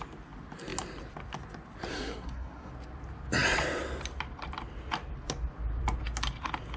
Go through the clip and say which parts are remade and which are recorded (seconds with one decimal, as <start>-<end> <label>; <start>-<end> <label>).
0.0-1.9 recorded; 1.9-2.7 remade; 2.7-6.8 recorded